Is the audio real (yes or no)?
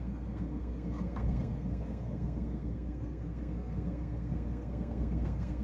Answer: no